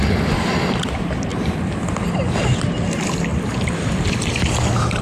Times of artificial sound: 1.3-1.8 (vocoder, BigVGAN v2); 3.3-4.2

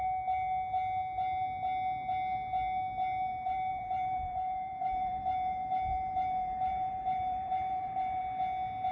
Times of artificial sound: 3.3-8.2 (vocoder, BigVGAN v2)

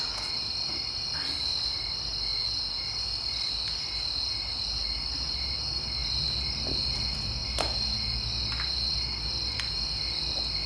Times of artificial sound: none

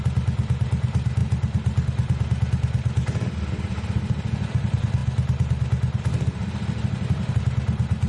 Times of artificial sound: none